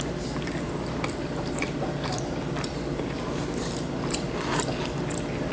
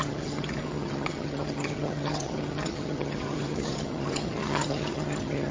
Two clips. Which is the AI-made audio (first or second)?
second